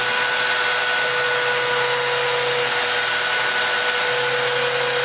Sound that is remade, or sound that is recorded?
recorded